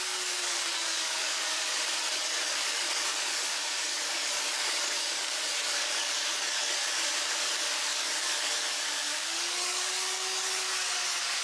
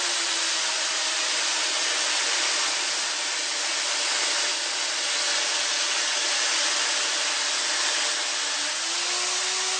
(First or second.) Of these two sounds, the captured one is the second